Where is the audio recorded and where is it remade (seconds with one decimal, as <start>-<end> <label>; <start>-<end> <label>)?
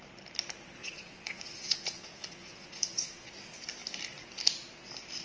0.0-0.8 recorded; 0.8-3.3 remade; 3.3-5.2 recorded